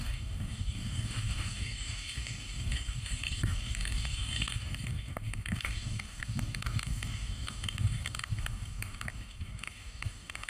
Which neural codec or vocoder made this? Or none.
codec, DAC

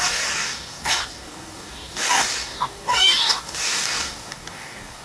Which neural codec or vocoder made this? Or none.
codec, DAC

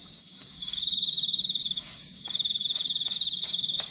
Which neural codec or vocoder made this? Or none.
codec, DAC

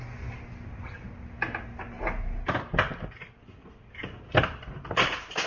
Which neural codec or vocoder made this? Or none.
none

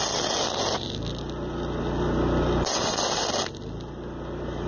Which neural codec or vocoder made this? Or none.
none